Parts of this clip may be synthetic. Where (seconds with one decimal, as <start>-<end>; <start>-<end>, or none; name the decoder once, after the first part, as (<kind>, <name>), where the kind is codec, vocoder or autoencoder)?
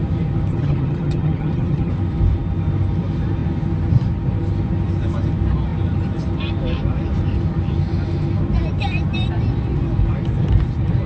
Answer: 0.5-1.9 (vocoder, HiFi-GAN)